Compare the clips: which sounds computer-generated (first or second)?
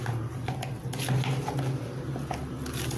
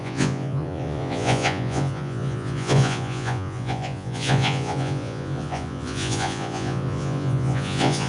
second